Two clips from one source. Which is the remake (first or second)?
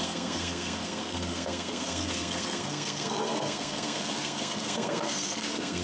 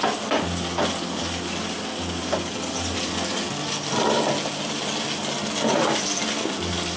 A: first